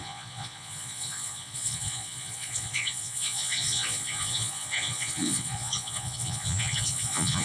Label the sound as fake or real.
fake